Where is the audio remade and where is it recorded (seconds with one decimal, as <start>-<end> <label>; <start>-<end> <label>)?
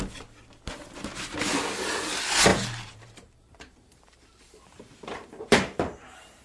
0.0-2.5 recorded; 2.5-6.4 remade